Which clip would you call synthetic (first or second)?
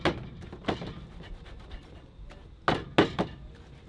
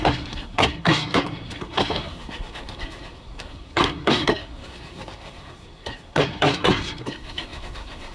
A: second